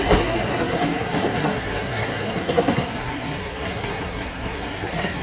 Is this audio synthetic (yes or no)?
yes